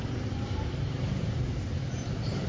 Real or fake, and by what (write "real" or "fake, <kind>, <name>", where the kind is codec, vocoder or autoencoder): fake, vocoder, BigVGAN v2